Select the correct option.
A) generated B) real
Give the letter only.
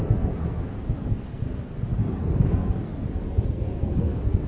A